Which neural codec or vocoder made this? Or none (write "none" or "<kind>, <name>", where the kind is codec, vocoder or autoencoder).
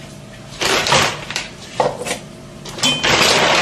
none